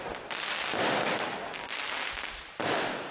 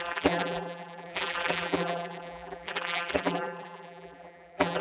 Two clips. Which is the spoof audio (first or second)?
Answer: second